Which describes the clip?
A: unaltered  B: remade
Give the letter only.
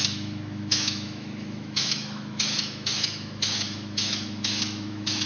B